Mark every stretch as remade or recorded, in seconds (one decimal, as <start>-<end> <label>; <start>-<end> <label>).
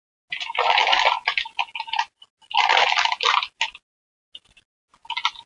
0.0-5.5 recorded